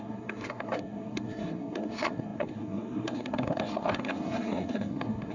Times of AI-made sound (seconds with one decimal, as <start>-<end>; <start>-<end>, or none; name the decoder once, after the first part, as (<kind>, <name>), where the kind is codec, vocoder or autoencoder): 0.0-5.3 (codec, SNAC)